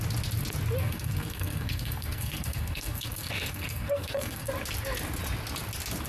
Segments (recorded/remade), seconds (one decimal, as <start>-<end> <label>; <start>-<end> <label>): 0.0-0.8 recorded; 0.8-4.5 remade; 4.5-6.1 recorded